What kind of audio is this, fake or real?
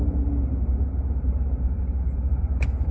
real